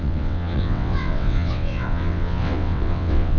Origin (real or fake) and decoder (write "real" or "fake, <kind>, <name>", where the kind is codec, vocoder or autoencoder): fake, vocoder, WaveNeXt